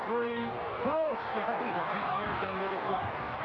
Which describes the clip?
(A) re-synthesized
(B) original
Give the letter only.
A